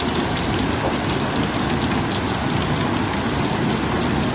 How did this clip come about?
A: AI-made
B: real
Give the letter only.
B